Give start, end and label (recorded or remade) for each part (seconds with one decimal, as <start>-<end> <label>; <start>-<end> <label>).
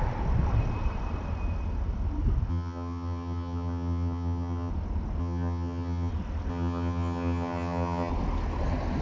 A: 0.0-2.5 recorded; 2.5-4.7 remade; 4.7-5.2 recorded; 5.2-6.1 remade; 6.1-6.5 recorded; 6.5-8.1 remade; 8.1-9.0 recorded